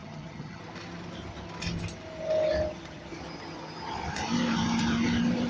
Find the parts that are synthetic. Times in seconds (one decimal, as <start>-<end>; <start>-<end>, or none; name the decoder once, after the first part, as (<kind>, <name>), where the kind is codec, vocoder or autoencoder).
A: 0.0-0.6 (vocoder, HiFi-GAN)